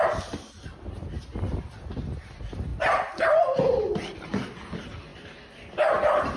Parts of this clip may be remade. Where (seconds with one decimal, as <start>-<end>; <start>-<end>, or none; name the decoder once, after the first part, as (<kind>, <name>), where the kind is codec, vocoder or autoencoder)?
none